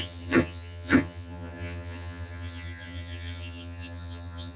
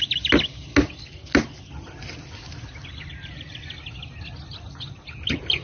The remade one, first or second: first